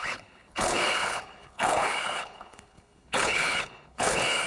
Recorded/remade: remade